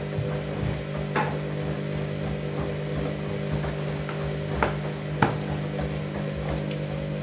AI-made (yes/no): no